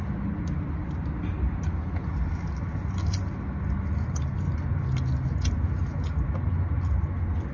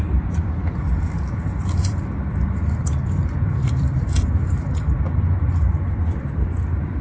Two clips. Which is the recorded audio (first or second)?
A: first